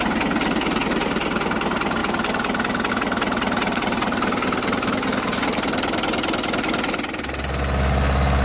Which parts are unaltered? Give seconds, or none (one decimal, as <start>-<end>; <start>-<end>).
0.0-8.4